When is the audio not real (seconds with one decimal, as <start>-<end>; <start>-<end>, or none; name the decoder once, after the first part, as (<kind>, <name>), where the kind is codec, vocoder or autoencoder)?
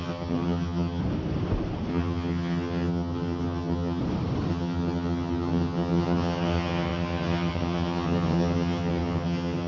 0.0-1.0 (vocoder, HiFi-GAN); 1.9-4.0; 4.5-9.7